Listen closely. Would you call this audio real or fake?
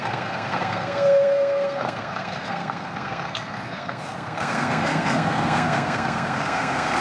fake